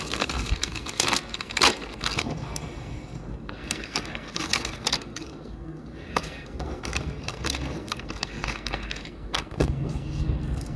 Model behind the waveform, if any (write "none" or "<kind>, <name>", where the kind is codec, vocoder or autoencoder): codec, SNAC